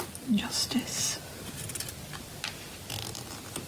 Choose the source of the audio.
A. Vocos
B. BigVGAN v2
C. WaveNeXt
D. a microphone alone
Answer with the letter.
D